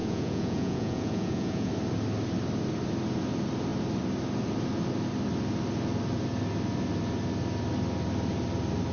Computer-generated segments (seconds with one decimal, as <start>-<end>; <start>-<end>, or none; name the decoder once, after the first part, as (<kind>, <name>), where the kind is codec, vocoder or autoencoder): 0.0-1.7 (vocoder, Vocos)